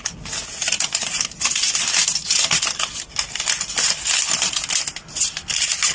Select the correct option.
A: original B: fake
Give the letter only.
A